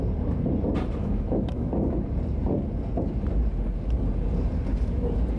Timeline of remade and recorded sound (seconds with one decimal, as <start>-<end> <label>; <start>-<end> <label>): 0.0-1.0 recorded; 1.0-1.7 remade; 1.7-5.4 recorded